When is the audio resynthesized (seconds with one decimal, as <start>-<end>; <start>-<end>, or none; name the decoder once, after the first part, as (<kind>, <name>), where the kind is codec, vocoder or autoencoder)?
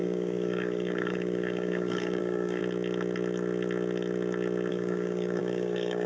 0.0-2.6 (codec, DAC); 4.7-6.1